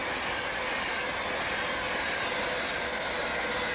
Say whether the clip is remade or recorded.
recorded